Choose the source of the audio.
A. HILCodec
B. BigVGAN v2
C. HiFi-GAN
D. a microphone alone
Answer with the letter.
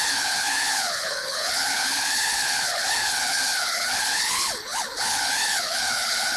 A